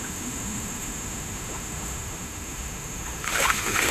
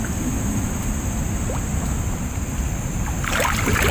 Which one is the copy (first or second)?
first